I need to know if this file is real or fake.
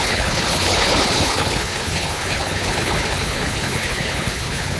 fake